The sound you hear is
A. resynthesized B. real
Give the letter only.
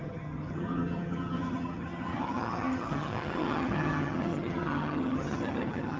A